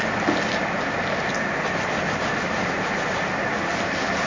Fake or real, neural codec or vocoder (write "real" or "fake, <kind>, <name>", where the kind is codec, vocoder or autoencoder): real